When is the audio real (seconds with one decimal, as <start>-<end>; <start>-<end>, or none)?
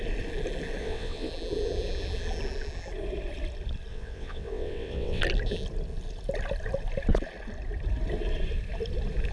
0.0-0.8; 1.3-3.9; 5.2-9.3